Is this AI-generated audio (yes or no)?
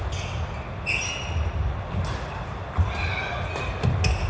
no